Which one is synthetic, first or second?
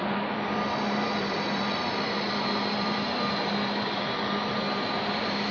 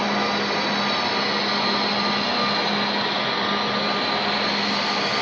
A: first